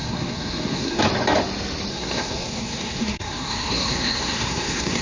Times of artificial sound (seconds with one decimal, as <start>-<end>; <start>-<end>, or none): 0.0-1.0; 1.9-5.0